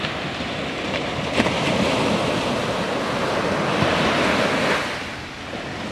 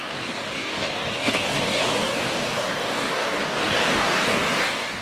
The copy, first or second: second